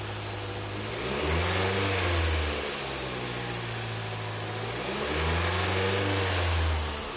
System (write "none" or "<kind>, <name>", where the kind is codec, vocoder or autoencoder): none